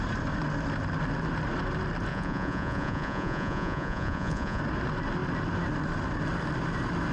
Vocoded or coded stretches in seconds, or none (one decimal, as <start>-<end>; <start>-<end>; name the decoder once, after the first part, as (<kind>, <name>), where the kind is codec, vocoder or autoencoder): 2.1-4.6 (vocoder, Vocos)